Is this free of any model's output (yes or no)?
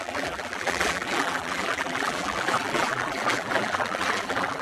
no